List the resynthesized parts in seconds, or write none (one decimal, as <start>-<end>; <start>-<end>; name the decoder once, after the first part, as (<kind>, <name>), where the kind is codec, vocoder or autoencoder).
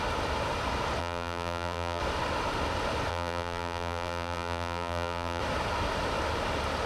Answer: 1.0-2.0 (vocoder, BigVGAN v2); 3.1-5.4